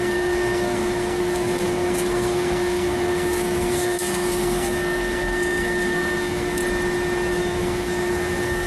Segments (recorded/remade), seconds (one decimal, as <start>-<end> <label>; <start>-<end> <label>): 0.0-6.6 remade; 6.6-7.3 recorded; 7.3-8.7 remade